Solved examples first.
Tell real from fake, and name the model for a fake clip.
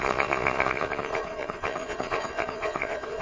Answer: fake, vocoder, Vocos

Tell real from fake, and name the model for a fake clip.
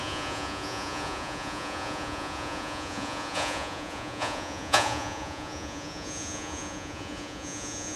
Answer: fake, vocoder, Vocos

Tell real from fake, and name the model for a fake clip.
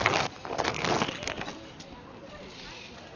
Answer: real